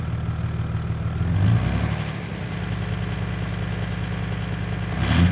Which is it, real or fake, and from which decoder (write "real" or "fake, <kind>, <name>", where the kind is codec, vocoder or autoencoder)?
real